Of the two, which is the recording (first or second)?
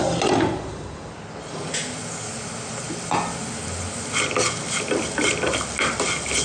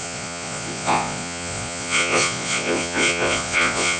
first